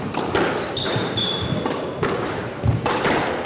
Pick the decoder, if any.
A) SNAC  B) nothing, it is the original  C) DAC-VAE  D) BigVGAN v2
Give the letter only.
B